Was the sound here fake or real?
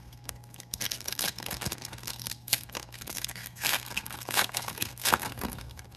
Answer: fake